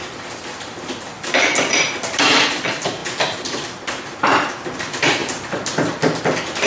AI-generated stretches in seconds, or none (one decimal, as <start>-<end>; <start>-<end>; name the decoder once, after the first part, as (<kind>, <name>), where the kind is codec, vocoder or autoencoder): none